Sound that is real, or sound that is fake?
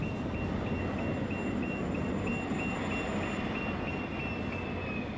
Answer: real